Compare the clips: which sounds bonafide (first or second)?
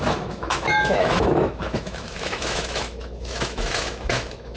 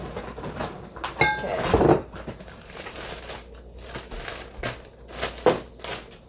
second